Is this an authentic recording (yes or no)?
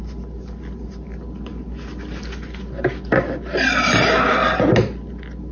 yes